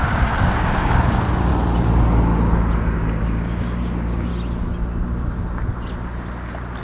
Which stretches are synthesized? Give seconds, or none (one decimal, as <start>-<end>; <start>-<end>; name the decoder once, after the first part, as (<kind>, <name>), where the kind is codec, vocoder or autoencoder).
0.0-1.5 (codec, DAC); 3.2-4.3